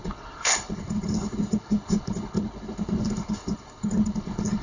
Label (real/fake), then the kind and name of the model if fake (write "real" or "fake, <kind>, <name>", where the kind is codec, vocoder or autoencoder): fake, codec, HILCodec